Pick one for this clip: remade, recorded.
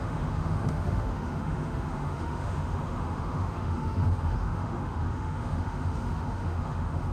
remade